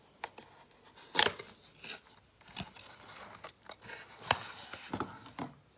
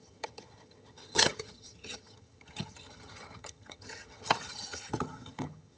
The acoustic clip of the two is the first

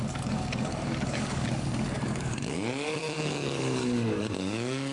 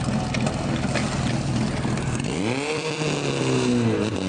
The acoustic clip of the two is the second